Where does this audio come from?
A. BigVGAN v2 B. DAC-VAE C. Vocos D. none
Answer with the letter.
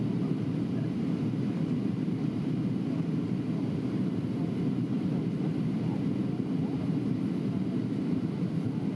A